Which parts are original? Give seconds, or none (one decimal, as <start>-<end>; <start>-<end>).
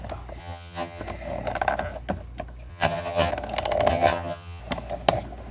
0.0-0.4; 1.0-2.7; 3.3-3.9; 4.6-5.5